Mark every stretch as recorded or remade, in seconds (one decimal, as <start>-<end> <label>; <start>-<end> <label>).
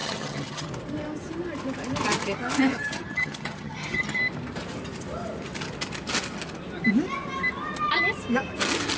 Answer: 0.0-0.7 remade; 0.7-2.7 recorded; 2.7-4.2 remade; 4.2-9.0 recorded